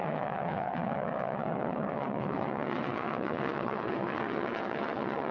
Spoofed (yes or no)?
yes